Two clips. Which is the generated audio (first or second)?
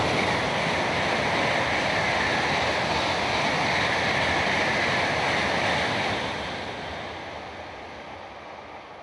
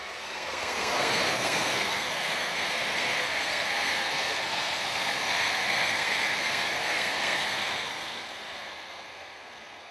second